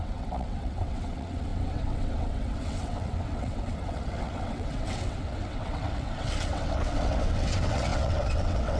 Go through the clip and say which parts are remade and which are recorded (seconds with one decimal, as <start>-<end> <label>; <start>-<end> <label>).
0.0-8.8 remade